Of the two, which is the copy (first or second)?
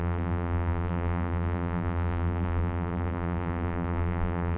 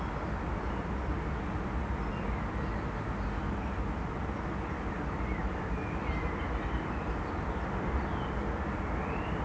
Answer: first